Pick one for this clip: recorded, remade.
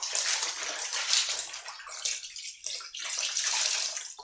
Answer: recorded